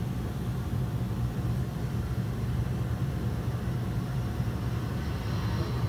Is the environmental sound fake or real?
real